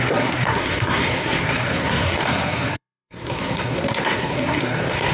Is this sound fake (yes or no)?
yes